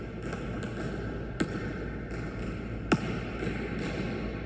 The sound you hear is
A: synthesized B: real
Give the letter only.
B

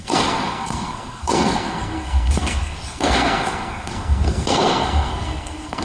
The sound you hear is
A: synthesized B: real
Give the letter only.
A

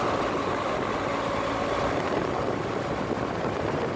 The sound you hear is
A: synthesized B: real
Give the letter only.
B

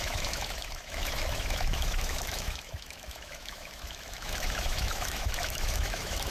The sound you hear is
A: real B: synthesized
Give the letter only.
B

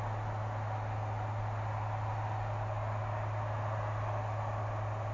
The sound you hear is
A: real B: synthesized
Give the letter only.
A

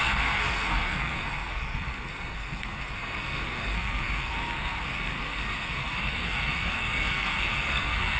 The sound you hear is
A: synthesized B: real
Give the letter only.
A